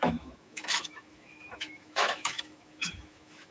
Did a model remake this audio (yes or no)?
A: yes